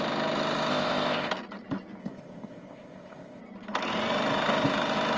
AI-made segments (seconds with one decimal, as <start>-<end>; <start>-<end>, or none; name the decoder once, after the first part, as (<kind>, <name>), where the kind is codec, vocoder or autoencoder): 0.7-1.3 (codec, ZipCodec); 2.0-3.4